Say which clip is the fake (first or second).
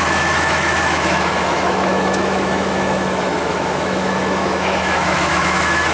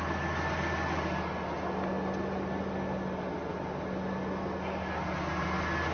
first